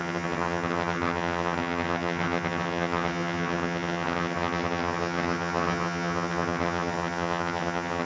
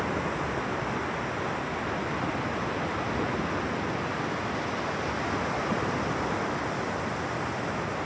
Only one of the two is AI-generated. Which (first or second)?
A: first